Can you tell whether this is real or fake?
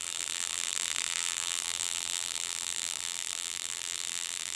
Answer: fake